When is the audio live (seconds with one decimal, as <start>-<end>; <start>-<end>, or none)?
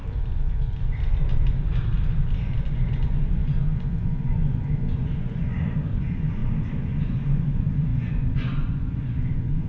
0.0-2.6; 6.4-7.0